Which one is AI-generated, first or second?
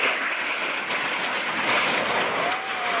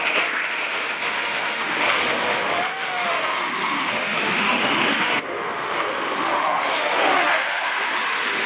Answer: second